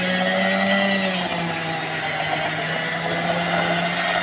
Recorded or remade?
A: recorded